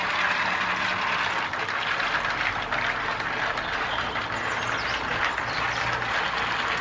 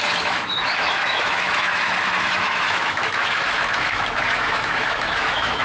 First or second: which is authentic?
first